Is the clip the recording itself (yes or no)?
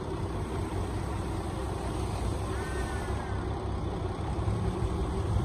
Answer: no